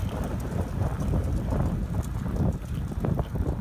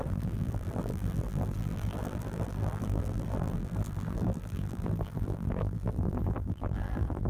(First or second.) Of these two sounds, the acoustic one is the first